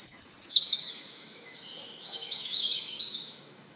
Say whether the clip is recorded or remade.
remade